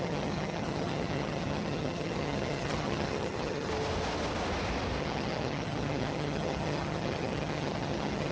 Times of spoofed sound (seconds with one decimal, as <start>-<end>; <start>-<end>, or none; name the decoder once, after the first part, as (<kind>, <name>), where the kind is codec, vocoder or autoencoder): 0.0-3.7 (vocoder, HiFi-GAN); 5.0-8.3